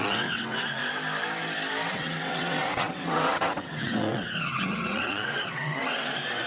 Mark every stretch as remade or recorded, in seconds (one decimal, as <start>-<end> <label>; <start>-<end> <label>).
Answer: 0.0-0.8 remade; 0.8-1.9 recorded; 1.9-6.5 remade

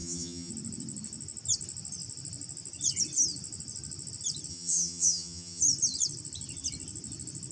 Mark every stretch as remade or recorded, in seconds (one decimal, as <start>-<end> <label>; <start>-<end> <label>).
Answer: 0.0-0.5 remade; 0.5-4.5 recorded; 4.5-5.6 remade; 5.6-7.5 recorded

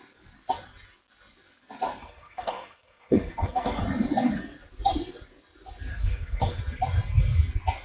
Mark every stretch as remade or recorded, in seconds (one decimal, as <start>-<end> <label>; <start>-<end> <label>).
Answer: 0.0-2.0 recorded; 2.0-3.8 remade; 3.8-5.9 recorded; 5.9-6.6 remade; 6.6-7.8 recorded

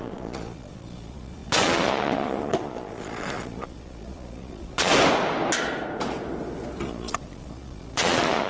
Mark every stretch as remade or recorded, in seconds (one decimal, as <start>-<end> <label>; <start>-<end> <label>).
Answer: 0.0-4.9 remade; 4.9-6.8 recorded; 6.8-8.5 remade

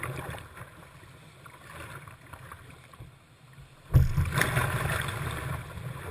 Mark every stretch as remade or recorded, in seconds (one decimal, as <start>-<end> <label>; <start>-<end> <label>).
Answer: 0.0-6.1 recorded

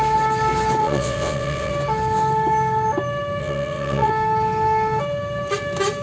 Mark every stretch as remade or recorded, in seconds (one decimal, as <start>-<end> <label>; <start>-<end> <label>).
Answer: 0.0-0.8 recorded; 0.8-1.7 remade; 1.7-3.4 recorded; 3.4-4.1 remade; 4.1-6.0 recorded

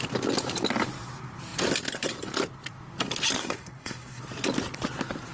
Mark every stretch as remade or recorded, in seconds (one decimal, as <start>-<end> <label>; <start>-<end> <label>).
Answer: 0.0-3.4 recorded; 3.4-4.2 remade; 4.2-5.3 recorded